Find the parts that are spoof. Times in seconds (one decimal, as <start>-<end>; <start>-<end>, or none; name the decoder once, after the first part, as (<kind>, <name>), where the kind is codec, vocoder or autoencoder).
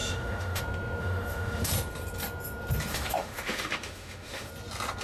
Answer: 0.0-0.6 (autoencoder, DAC-VAE); 1.0-1.7; 2.9-4.5